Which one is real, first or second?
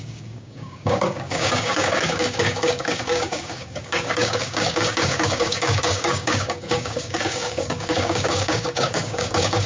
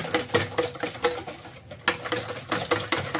second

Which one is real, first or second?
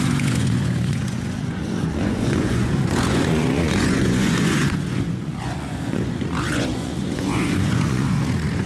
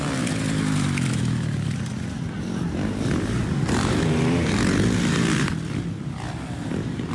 second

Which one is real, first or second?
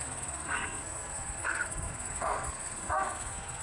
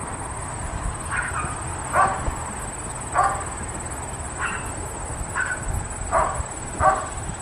second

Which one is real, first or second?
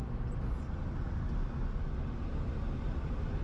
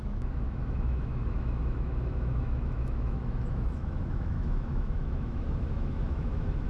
first